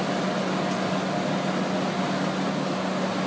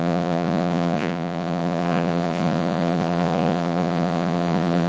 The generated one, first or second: second